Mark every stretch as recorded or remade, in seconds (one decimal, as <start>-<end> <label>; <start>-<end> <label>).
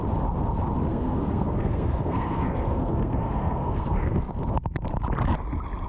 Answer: 0.0-0.9 recorded; 0.9-4.4 remade; 4.4-5.9 recorded